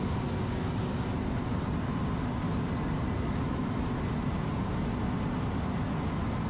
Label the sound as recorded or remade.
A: recorded